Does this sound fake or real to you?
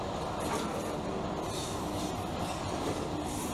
real